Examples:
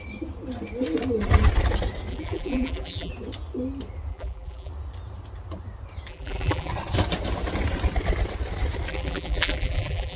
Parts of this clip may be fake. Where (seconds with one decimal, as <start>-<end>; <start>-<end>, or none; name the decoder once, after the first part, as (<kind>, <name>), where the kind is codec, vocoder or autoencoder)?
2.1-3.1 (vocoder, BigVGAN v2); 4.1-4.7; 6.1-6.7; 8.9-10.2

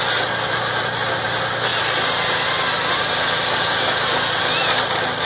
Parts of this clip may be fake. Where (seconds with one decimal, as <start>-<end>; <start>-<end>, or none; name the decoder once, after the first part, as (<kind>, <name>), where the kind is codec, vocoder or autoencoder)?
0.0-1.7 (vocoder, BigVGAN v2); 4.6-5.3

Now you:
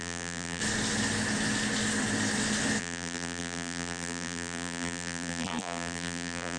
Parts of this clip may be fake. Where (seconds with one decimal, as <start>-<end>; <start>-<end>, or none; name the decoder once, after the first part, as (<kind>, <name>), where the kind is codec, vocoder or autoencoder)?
0.0-0.6 (vocoder, BigVGAN v2); 2.8-6.6

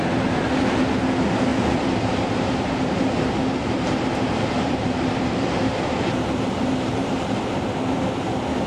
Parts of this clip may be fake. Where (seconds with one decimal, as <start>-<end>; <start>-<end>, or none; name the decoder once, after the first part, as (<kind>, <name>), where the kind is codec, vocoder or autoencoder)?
1.5-3.0 (vocoder, BigVGAN v2); 3.6-7.8

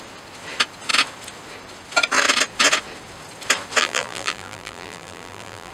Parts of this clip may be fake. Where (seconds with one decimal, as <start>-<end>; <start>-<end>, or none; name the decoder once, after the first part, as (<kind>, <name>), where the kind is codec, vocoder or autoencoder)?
3.8-5.7 (vocoder, BigVGAN v2)

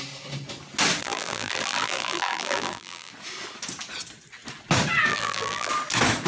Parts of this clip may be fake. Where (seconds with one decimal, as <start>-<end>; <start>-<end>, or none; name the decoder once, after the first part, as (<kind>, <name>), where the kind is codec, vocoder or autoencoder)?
1.0-3.1 (vocoder, BigVGAN v2); 5.1-5.7

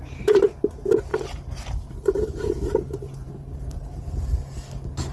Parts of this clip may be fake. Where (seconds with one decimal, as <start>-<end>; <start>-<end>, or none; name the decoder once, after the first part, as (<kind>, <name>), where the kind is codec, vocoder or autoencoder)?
1.1-4.2 (vocoder, BigVGAN v2)